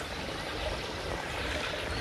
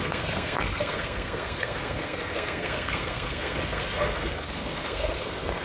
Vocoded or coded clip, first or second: second